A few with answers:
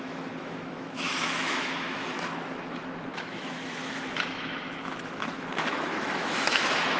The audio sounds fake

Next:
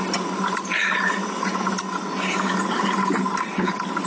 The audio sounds real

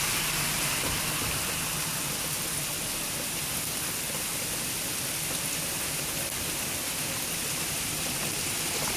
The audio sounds real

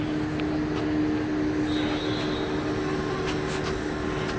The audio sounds real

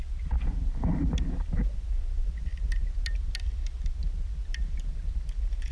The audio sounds real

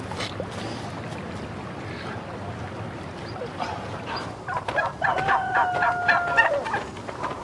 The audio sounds real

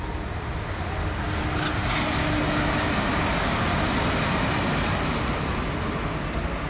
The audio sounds real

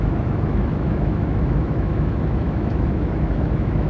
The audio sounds fake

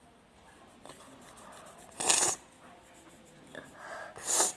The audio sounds real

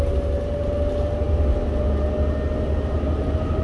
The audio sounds real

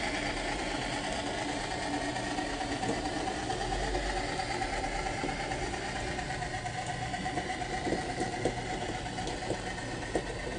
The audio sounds real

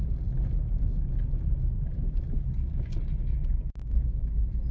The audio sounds real